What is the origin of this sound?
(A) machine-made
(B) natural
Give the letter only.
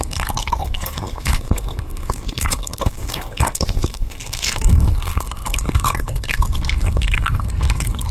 A